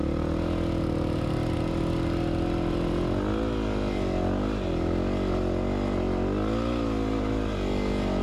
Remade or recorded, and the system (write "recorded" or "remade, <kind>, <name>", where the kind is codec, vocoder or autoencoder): recorded